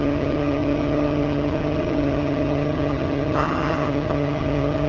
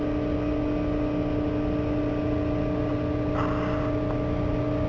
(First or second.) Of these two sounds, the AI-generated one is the first